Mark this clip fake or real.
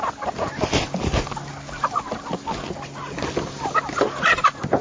real